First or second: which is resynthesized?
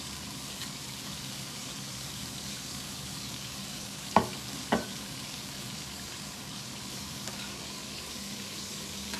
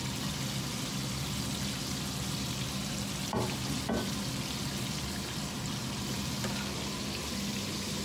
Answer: first